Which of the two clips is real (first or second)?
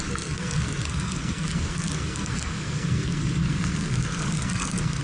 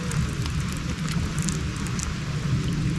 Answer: second